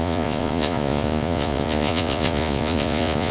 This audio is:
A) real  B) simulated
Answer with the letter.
B